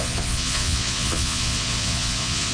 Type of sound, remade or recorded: remade